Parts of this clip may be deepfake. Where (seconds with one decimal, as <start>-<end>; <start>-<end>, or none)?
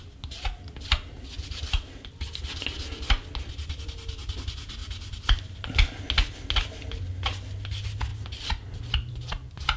none